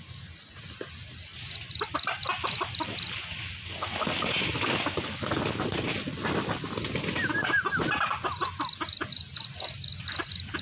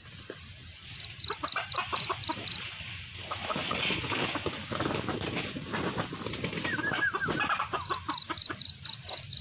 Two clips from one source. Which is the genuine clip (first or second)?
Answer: first